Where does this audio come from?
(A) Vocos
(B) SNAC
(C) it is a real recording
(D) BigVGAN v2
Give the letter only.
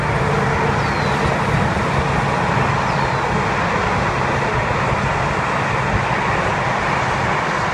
C